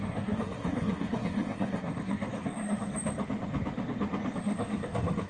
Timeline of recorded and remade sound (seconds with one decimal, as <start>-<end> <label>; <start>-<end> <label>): 0.0-2.9 remade; 2.9-4.4 recorded; 4.4-5.3 remade

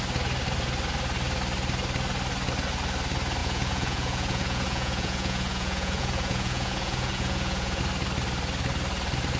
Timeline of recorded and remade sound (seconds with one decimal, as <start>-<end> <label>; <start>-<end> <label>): 0.0-3.4 recorded; 3.4-7.8 remade; 7.8-9.4 recorded

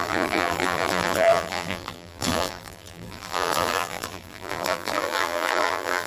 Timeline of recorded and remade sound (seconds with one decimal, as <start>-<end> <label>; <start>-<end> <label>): 0.0-6.1 remade

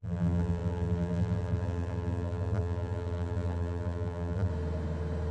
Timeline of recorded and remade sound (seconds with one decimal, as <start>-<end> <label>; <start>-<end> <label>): 0.0-4.5 remade; 4.5-5.3 recorded